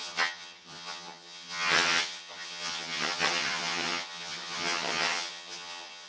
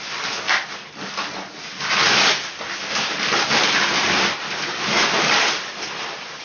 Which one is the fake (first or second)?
first